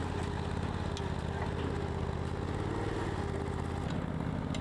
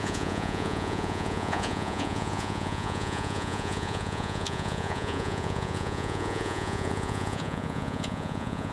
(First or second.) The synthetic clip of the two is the second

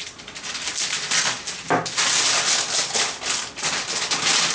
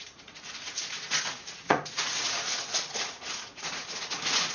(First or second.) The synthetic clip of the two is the second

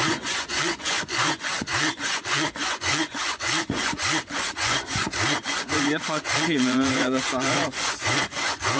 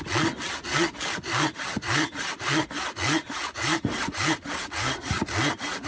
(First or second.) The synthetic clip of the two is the first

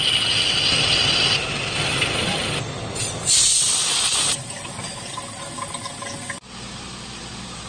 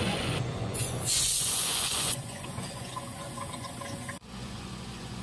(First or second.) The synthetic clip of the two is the second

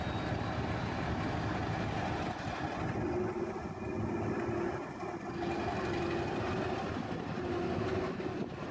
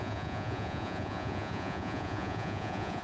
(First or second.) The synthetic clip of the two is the second